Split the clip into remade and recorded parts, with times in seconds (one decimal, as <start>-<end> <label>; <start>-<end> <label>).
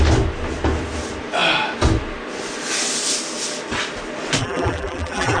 0.0-4.4 recorded; 4.4-5.4 remade